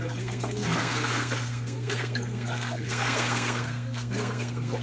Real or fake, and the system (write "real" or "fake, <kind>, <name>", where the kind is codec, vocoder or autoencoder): fake, codec, SNAC